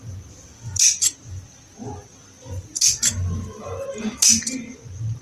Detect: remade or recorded recorded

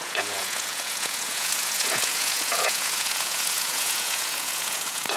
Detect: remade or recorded remade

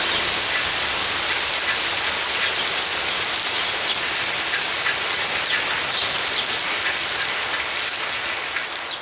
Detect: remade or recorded recorded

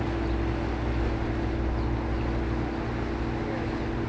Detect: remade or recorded recorded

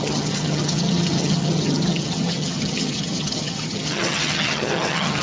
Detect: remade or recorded remade